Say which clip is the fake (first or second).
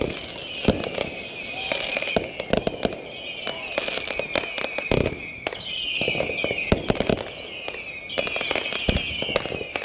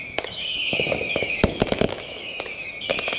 second